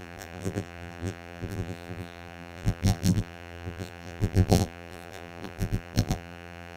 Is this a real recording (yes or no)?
no